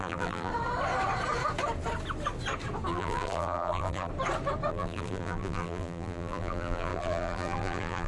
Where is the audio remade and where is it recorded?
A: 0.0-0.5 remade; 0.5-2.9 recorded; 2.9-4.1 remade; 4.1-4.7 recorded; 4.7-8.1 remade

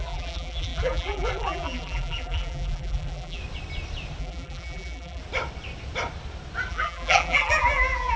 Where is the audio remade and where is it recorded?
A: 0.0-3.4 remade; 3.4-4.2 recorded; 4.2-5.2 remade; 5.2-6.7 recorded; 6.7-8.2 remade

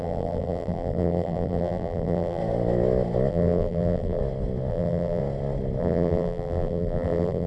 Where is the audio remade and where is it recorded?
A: 0.0-2.4 remade; 2.4-3.3 recorded; 3.3-4.2 remade; 4.2-4.7 recorded; 4.7-5.2 remade; 5.2-5.8 recorded; 5.8-7.5 remade